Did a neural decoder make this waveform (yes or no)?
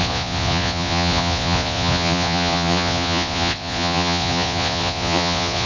yes